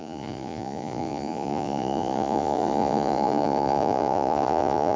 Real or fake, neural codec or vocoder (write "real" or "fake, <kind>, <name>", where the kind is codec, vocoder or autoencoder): fake, vocoder, Vocos